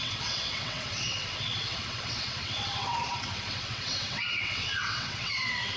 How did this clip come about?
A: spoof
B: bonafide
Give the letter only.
A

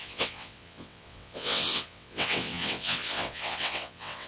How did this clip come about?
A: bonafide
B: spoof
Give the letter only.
B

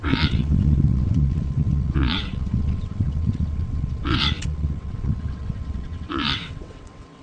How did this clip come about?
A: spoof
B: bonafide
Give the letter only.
A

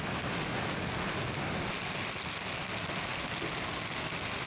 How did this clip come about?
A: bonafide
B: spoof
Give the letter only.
A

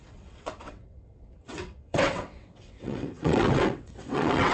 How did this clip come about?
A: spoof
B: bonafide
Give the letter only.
A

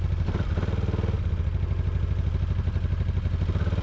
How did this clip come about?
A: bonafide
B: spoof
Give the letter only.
A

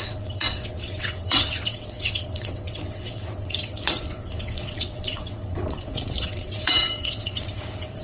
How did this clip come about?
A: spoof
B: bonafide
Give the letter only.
A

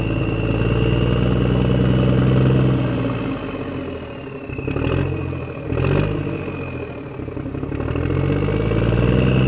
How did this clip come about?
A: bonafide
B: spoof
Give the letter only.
A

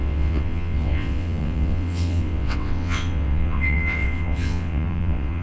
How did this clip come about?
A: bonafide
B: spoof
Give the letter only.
B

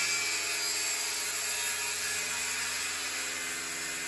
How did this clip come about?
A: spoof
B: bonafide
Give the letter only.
B